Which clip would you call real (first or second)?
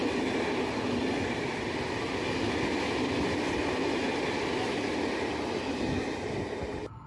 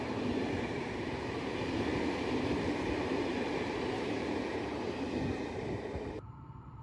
first